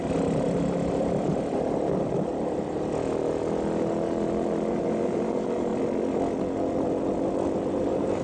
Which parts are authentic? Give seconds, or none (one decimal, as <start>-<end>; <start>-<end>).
0.0-4.7; 5.7-7.7